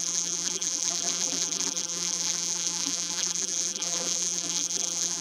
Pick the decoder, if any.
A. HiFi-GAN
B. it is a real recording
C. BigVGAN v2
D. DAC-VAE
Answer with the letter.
C